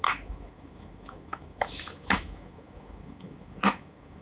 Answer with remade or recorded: remade